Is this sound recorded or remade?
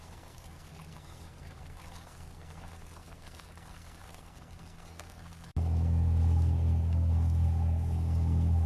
remade